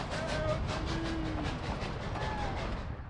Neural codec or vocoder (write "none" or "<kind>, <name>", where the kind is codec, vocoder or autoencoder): none